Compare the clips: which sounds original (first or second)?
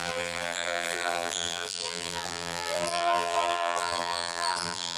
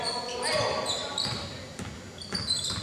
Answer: second